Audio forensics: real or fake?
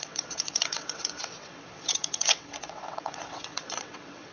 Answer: fake